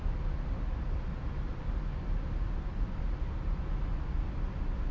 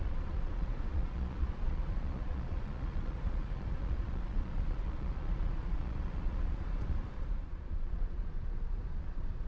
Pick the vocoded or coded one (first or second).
second